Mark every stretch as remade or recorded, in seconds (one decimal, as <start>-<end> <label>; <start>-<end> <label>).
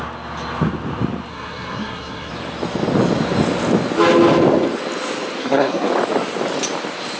0.0-1.3 recorded; 1.3-2.3 remade; 2.3-5.4 recorded; 5.4-5.9 remade; 5.9-7.2 recorded